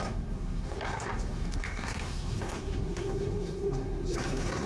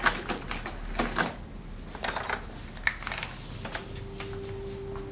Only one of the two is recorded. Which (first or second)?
second